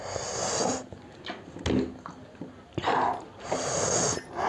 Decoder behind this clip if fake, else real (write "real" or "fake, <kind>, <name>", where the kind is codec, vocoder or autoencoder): real